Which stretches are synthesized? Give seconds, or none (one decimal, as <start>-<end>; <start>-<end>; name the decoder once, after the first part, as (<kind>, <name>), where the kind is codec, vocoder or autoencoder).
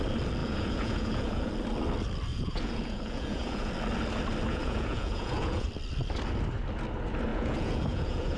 0.4-1.5 (vocoder, Vocos); 2.3-3.7; 4.5-5.7; 7.3-8.4